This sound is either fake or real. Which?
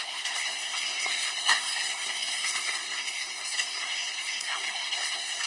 fake